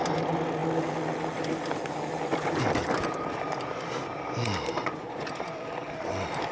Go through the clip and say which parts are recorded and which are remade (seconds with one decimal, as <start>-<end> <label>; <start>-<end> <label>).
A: 0.0-4.8 recorded; 4.8-5.5 remade; 5.5-6.5 recorded